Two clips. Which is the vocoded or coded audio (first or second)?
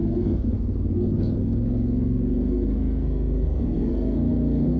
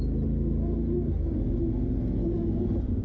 first